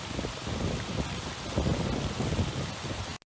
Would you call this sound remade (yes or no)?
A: no